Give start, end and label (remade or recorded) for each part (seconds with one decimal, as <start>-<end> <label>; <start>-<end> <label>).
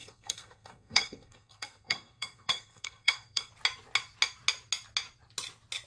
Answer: 0.0-3.5 remade; 3.5-5.9 recorded